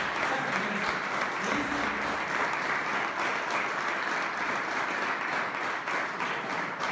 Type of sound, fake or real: real